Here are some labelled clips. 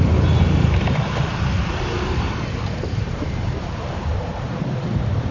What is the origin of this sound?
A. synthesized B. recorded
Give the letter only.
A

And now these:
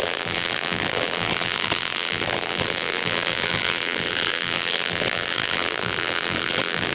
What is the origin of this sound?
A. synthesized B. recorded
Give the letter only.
A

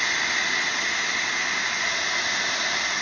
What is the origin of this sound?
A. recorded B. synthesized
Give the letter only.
A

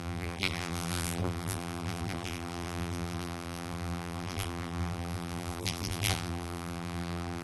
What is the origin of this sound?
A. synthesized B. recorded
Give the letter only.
A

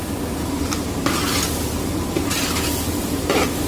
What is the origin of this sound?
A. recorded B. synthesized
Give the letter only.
B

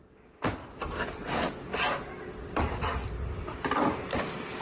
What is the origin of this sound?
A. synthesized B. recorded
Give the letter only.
B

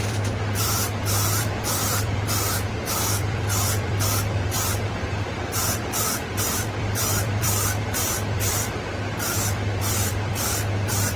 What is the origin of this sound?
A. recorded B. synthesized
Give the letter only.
B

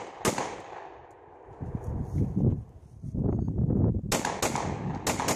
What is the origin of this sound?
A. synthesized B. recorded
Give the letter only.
B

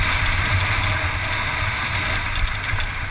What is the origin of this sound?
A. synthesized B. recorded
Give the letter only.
B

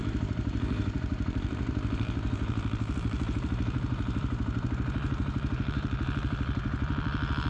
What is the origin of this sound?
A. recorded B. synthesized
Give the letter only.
B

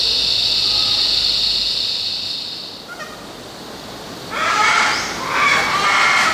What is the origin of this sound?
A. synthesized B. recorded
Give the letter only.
B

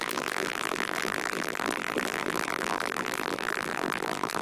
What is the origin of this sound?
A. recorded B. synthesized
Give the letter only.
B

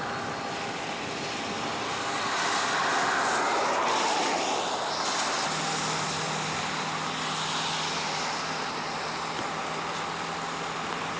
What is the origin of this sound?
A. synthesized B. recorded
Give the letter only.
B